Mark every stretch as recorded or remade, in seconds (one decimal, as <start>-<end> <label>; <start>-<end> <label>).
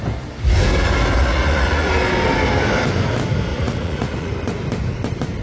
0.0-1.2 recorded; 1.2-1.9 remade; 1.9-3.5 recorded; 3.5-4.3 remade; 4.3-5.4 recorded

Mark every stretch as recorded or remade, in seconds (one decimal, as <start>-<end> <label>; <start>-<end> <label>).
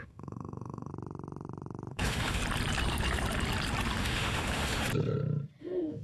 0.0-0.9 remade; 0.9-1.9 recorded; 1.9-2.4 remade; 2.4-4.0 recorded; 4.0-4.9 remade; 4.9-5.6 recorded; 5.6-6.0 remade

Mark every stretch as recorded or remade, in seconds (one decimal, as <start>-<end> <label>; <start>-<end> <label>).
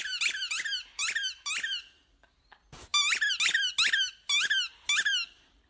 0.0-5.7 recorded